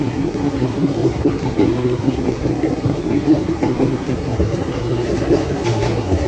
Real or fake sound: fake